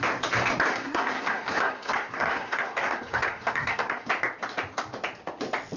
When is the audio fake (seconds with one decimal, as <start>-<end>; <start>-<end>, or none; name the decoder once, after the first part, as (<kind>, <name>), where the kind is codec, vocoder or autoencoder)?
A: 0.7-4.1 (codec, SNAC)